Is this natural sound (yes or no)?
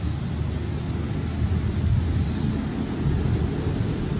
yes